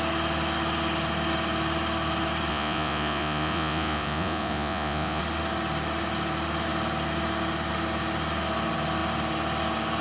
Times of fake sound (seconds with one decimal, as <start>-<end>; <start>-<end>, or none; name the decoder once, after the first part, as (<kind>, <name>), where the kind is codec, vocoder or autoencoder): 2.5-5.2 (vocoder, Vocos)